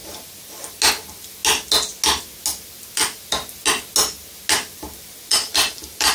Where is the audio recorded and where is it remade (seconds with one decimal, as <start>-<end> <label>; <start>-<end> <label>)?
0.0-5.3 recorded; 5.3-6.1 remade

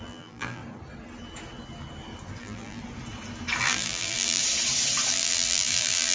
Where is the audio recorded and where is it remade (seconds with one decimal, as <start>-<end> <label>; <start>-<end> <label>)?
0.0-0.6 remade; 0.6-2.4 recorded; 2.4-2.8 remade; 2.8-3.6 recorded; 3.6-4.4 remade; 4.4-5.1 recorded; 5.1-6.1 remade

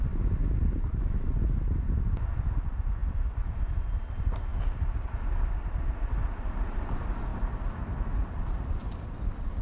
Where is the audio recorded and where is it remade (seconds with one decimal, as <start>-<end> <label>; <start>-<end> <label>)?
0.0-9.6 recorded